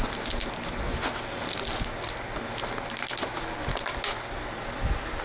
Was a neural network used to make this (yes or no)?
no